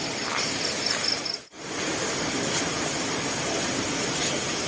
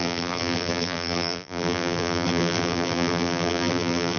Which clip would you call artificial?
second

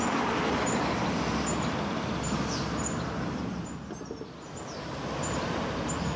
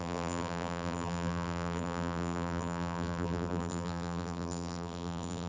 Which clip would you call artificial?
second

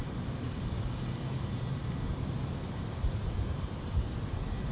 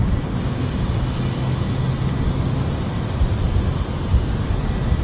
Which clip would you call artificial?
first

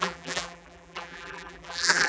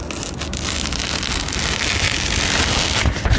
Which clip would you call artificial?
first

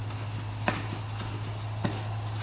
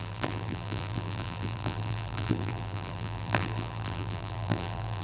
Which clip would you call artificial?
second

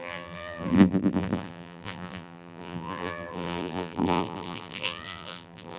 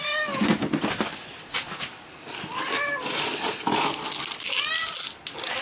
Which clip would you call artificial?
first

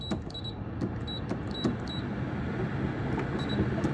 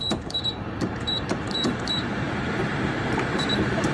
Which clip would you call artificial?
second